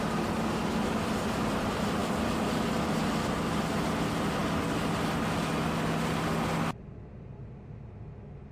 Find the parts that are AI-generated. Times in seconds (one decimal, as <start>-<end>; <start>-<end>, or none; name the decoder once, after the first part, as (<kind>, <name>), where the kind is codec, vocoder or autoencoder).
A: none